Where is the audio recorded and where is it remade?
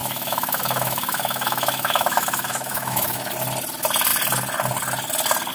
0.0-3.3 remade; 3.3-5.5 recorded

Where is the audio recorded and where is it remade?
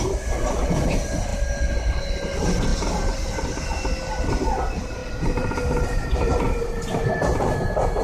0.0-5.0 recorded; 5.0-6.5 remade; 6.5-8.0 recorded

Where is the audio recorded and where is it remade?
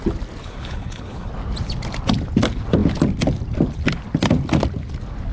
0.0-0.4 recorded; 0.4-1.3 remade; 1.3-5.3 recorded